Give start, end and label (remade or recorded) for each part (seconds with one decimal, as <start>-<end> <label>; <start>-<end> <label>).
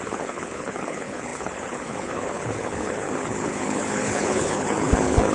0.0-5.3 remade